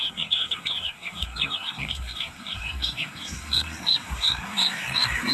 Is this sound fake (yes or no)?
yes